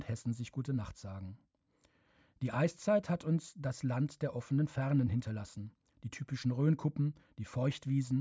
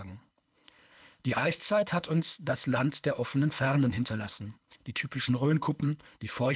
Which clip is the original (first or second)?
first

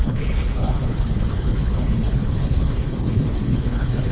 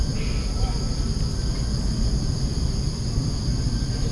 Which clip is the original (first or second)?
second